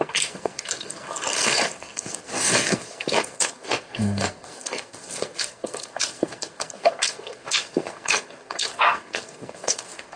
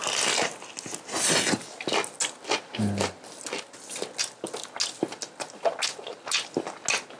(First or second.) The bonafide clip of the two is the second